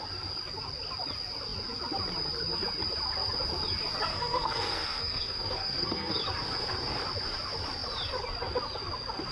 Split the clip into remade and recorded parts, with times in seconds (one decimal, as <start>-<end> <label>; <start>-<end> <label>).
0.0-4.1 recorded; 4.1-6.2 remade; 6.2-9.3 recorded